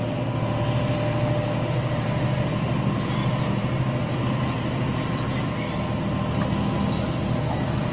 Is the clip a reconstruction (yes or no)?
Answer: no